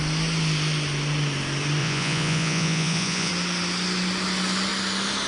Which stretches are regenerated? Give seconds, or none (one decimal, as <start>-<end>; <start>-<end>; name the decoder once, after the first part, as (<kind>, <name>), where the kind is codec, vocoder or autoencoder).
1.8-3.3 (vocoder, Vocos)